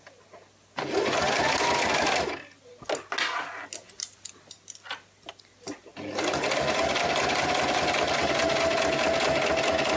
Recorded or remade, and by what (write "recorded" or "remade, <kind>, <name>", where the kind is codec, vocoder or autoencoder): recorded